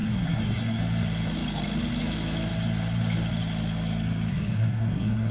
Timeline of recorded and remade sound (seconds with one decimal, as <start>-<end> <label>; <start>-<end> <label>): 0.0-0.8 remade; 0.8-4.3 recorded; 4.3-5.3 remade